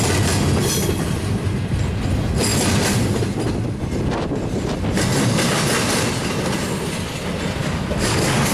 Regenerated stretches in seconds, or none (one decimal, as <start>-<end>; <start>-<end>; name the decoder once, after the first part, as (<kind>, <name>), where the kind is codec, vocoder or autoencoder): 7.6-8.5 (codec, DAC)